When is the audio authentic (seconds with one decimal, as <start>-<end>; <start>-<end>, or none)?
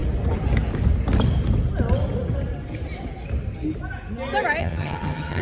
0.0-4.6